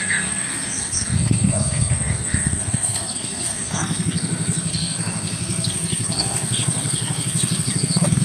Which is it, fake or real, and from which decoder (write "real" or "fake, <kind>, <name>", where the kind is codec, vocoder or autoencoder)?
fake, codec, SNAC